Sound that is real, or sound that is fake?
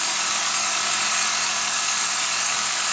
fake